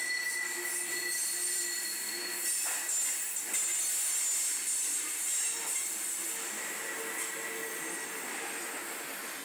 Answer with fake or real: real